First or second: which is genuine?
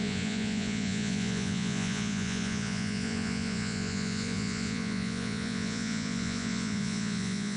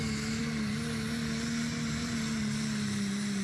second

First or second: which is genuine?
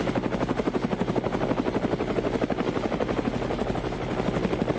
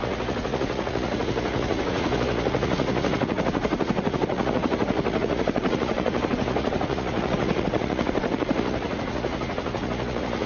first